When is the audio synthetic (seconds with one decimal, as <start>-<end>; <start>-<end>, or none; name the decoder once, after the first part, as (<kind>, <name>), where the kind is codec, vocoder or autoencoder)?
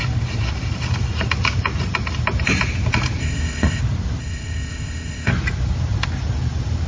3.2-3.8 (codec, ZipCodec); 4.2-5.3